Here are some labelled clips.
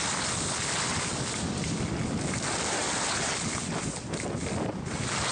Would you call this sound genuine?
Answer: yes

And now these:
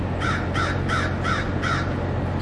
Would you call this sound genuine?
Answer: yes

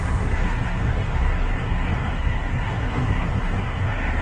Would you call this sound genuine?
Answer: no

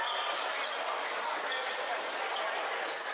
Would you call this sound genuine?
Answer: yes